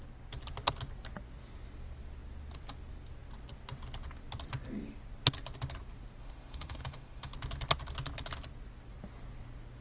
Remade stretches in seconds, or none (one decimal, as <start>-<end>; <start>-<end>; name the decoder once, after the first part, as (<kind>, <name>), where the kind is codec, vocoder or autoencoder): 6.2-7.3 (autoencoder, DAC-VAE)